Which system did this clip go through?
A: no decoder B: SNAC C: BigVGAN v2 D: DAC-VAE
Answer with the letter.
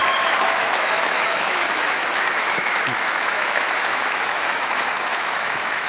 D